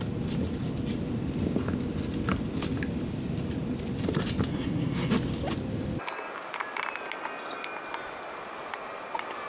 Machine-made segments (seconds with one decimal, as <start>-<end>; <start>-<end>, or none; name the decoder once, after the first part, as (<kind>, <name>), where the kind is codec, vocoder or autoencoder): 4.5-5.1 (codec, SNAC)